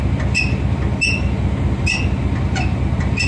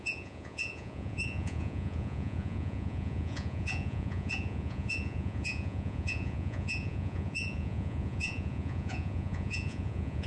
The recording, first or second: first